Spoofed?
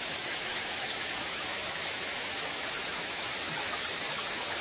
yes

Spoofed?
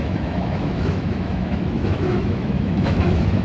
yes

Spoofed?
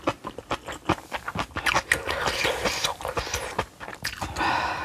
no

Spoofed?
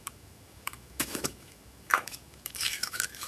yes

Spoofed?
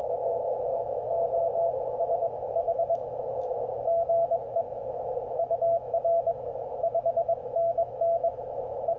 yes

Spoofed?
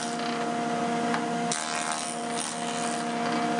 no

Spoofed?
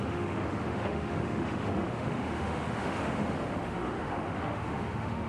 yes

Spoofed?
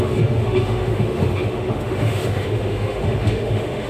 yes